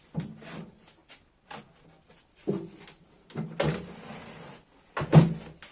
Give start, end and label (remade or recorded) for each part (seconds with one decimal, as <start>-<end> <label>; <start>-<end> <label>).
0.0-5.7 recorded